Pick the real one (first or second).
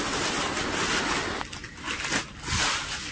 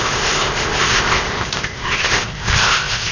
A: first